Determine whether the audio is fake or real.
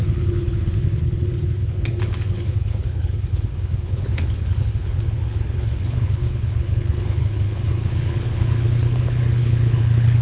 fake